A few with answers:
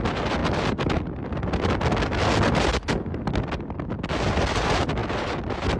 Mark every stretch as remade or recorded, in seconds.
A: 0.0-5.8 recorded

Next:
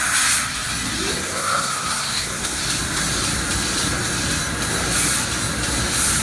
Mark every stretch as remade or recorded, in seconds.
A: 0.0-1.1 recorded; 1.1-2.6 remade; 2.6-6.2 recorded

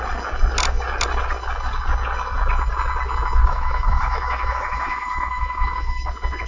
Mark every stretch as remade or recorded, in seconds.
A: 0.0-3.4 recorded; 3.4-6.1 remade; 6.1-6.5 recorded

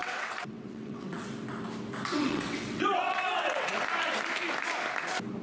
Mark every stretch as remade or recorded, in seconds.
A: 0.0-1.3 remade; 1.3-2.1 recorded; 2.1-3.7 remade; 3.7-5.4 recorded